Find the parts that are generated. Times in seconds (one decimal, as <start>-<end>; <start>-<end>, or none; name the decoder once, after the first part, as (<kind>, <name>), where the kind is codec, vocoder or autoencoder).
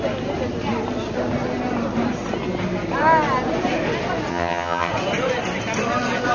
4.3-4.9 (vocoder, HiFi-GAN)